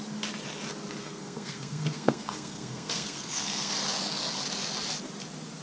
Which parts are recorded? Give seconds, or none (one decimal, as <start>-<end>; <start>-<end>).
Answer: 0.0-1.0; 3.7-5.6